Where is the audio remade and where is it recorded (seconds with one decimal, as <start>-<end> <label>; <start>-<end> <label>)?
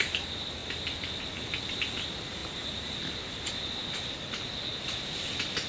0.0-5.7 recorded